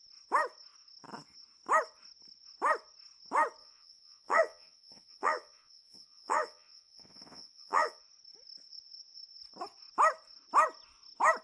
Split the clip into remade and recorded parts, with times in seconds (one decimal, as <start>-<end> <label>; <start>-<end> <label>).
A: 0.0-3.6 recorded; 3.6-8.0 remade; 8.0-11.4 recorded